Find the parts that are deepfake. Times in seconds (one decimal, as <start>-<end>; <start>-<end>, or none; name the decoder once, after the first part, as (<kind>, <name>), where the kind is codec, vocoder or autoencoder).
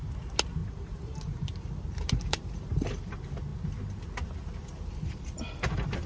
0.6-2.9 (vocoder, BigVGAN v2)